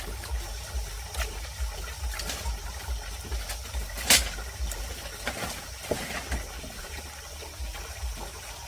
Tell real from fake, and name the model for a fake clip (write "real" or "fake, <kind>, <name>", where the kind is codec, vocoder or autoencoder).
real